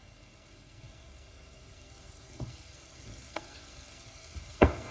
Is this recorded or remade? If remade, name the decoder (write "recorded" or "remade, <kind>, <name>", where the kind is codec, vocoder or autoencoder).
remade, codec, SNAC